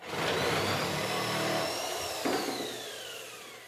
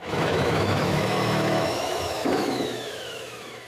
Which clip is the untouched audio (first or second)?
first